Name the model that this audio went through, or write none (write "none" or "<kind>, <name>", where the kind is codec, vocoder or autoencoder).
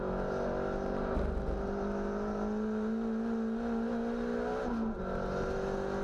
none